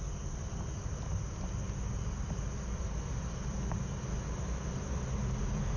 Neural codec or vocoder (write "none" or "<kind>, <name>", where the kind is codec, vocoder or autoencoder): none